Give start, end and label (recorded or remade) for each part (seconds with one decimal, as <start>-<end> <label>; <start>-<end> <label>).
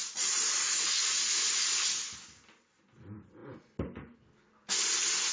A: 0.0-1.4 remade; 1.4-5.3 recorded